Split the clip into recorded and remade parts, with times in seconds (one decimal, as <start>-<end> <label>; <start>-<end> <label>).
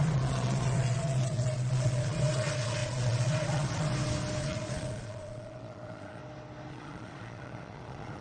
0.0-3.9 remade; 3.9-4.4 recorded; 4.4-6.2 remade; 6.2-6.7 recorded; 6.7-8.2 remade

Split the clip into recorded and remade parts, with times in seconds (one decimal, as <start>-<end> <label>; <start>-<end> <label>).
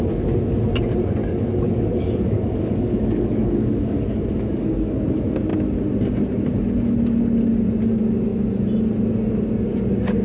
0.0-1.2 recorded; 1.2-5.0 remade; 5.0-10.2 recorded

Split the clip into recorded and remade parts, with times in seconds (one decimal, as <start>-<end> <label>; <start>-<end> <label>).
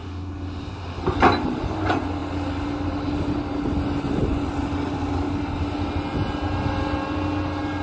0.0-1.0 remade; 1.0-7.8 recorded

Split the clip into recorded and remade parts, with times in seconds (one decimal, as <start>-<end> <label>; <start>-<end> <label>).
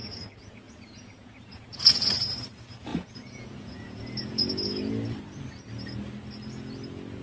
0.0-2.1 remade; 2.1-2.9 recorded; 2.9-4.9 remade; 4.9-7.2 recorded